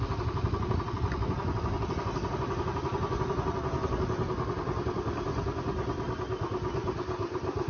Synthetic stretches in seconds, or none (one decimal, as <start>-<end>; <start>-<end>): none